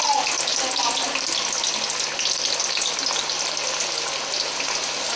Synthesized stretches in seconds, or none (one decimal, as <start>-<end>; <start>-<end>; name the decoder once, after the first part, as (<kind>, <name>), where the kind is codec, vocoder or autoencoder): none